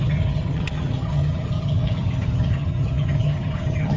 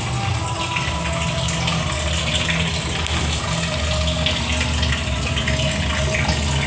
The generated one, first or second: first